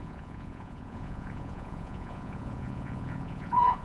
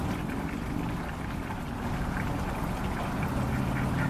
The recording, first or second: second